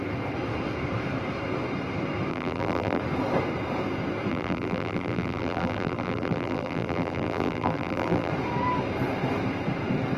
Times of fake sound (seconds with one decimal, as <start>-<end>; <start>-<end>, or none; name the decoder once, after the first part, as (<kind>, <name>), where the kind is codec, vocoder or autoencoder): 2.3-3.0 (vocoder, BigVGAN v2); 4.3-8.3